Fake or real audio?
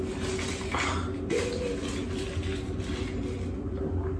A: real